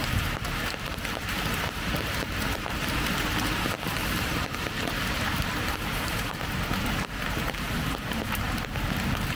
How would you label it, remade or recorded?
remade